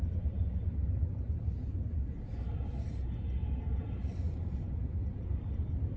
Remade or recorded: recorded